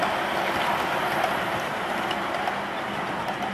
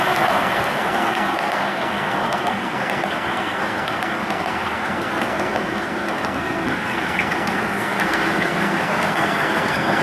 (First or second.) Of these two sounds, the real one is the first